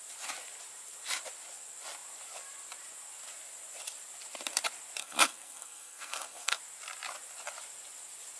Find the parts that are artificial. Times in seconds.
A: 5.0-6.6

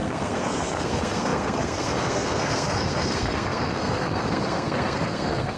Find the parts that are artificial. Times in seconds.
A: 0.0-5.6

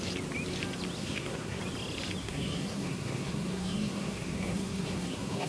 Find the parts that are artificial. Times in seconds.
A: 1.0-1.6; 2.2-5.5